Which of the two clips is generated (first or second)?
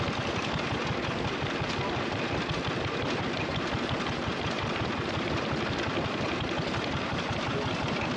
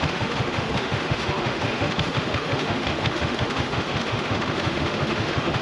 second